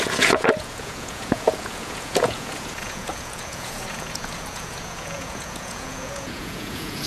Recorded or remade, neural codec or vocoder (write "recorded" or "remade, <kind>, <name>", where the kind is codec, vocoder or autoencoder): remade, vocoder, Vocos